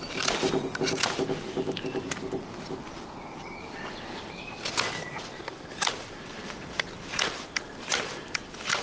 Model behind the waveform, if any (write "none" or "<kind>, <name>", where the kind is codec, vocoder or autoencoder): none